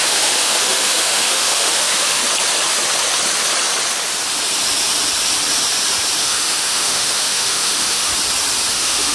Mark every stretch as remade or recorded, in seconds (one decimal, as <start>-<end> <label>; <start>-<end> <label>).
0.0-2.2 remade; 2.2-6.2 recorded; 6.2-8.1 remade; 8.1-8.7 recorded; 8.7-9.1 remade